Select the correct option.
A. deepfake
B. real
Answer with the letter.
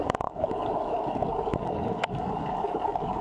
A